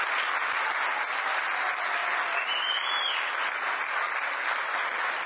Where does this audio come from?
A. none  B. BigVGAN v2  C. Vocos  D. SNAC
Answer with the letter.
A